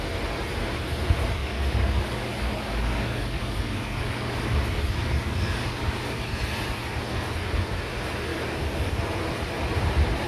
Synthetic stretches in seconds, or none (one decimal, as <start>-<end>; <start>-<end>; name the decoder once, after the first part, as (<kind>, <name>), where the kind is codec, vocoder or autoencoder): 1.4-6.3 (codec, DAC); 8.3-9.0